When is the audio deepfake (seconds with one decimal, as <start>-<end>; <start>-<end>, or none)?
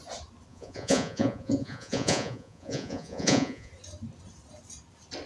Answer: 0.5-3.7